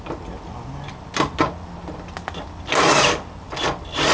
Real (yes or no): yes